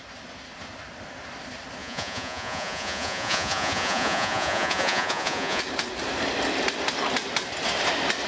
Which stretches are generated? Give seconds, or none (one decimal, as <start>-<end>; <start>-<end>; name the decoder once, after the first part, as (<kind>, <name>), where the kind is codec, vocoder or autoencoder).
1.8-5.6 (vocoder, Vocos)